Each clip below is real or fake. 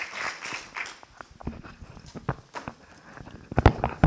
real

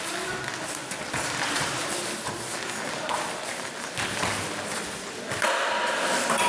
real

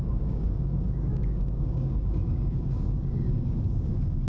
fake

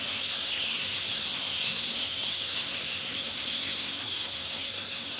fake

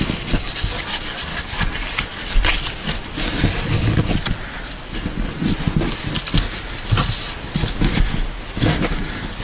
real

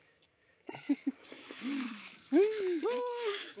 fake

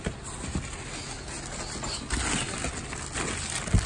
real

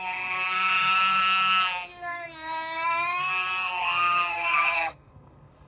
fake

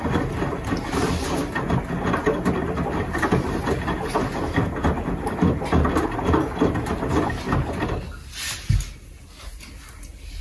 real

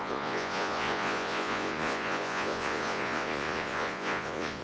fake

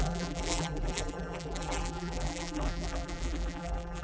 fake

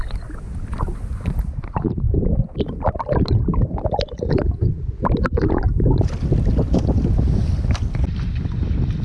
real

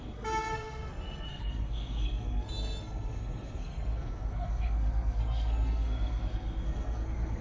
fake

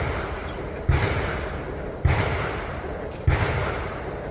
real